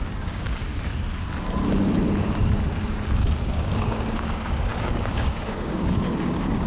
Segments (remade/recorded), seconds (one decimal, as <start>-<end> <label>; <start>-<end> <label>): 0.0-0.7 remade; 0.7-3.4 recorded; 3.4-6.7 remade